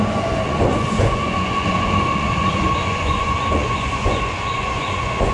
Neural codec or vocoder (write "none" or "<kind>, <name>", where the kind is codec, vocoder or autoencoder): vocoder, Vocos